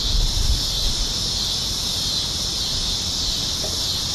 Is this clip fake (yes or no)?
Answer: no